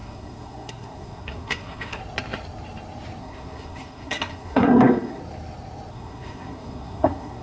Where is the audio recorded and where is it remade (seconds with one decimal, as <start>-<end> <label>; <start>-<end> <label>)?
0.0-2.0 remade; 2.0-3.2 recorded; 3.2-5.2 remade; 5.2-5.9 recorded; 5.9-7.4 remade